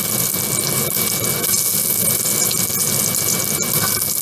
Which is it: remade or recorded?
recorded